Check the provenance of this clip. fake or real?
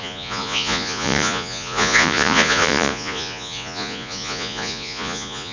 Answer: fake